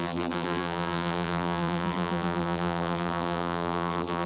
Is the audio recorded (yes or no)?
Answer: no